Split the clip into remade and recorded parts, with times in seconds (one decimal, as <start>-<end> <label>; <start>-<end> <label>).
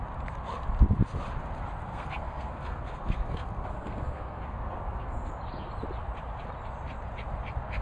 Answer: 0.0-1.9 recorded; 1.9-5.3 remade; 5.3-7.8 recorded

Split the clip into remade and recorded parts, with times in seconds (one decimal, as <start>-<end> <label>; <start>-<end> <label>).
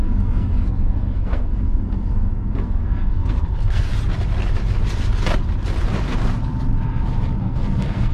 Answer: 0.0-3.9 remade; 3.9-7.4 recorded; 7.4-8.1 remade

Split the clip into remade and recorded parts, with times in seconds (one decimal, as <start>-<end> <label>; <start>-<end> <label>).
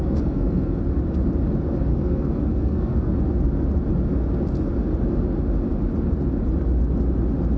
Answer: 0.0-0.8 remade; 0.8-1.9 recorded; 1.9-3.1 remade; 3.1-7.6 recorded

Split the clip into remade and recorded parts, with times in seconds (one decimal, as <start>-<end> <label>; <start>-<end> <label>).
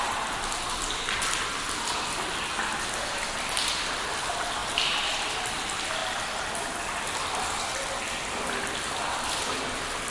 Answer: 0.0-10.1 recorded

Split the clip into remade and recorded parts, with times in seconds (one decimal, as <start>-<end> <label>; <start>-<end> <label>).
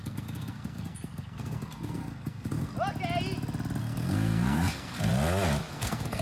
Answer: 0.0-2.7 remade; 2.7-3.8 recorded; 3.8-5.1 remade; 5.1-5.7 recorded; 5.7-6.2 remade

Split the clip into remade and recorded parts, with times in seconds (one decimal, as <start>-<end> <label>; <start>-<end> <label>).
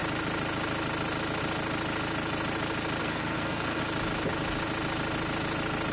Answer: 0.0-3.0 recorded; 3.0-3.8 remade; 3.8-5.9 recorded